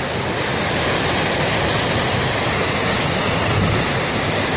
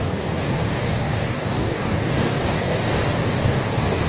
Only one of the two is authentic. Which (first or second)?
first